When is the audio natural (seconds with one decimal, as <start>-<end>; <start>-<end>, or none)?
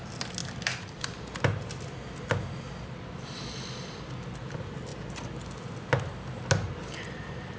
0.0-7.6